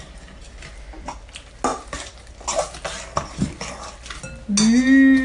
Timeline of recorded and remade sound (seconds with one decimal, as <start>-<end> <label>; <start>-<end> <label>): 0.0-5.2 recorded